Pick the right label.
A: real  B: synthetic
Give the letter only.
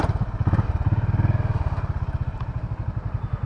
A